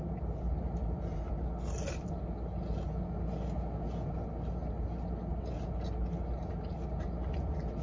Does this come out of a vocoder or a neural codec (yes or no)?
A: no